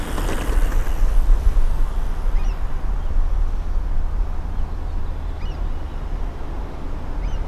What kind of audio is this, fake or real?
real